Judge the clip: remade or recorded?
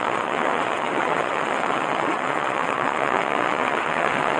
remade